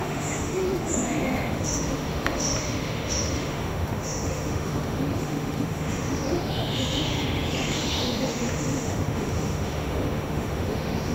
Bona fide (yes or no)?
no